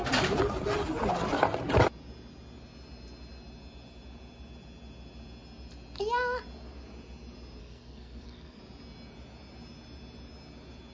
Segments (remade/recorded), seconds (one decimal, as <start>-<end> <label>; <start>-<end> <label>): 0.0-7.6 recorded; 7.6-8.6 remade; 8.6-10.9 recorded